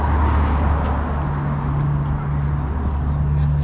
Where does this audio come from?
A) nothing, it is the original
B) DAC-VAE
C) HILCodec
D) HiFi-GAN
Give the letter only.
A